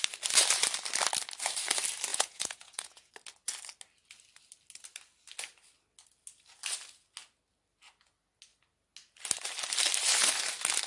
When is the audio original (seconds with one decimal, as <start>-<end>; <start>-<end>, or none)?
0.0-2.1; 3.1-10.9